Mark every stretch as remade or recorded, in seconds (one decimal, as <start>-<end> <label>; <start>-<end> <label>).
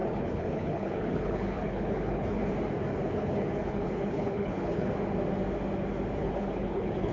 0.0-2.5 remade; 2.5-2.9 recorded; 2.9-4.9 remade; 4.9-6.2 recorded; 6.2-7.1 remade